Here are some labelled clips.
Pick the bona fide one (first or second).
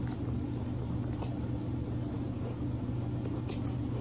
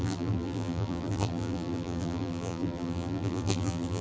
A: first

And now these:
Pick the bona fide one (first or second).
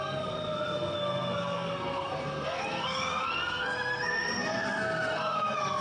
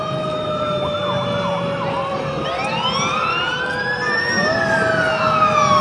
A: second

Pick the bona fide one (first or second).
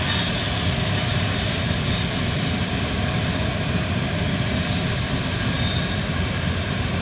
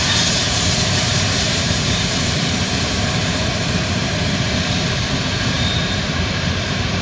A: first